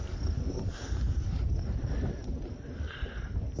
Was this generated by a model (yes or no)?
no